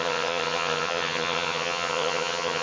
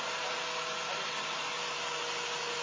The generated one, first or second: first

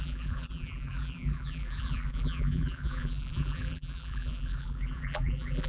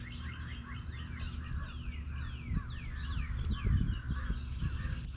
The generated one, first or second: first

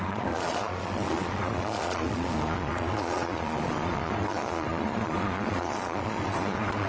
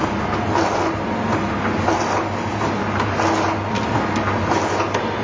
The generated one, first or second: first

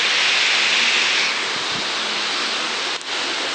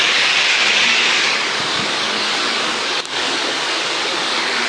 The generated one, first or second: second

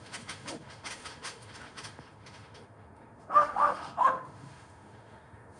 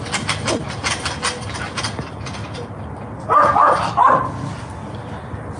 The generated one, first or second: first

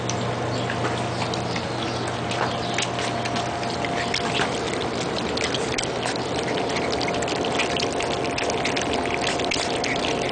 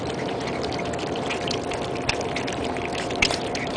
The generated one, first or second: second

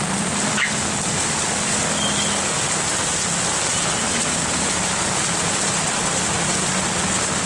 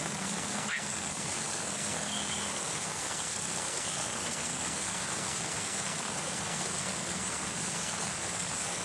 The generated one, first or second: second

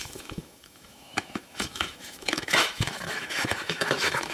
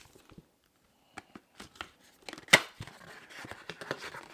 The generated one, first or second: first